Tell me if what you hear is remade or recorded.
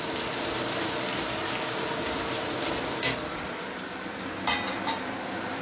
recorded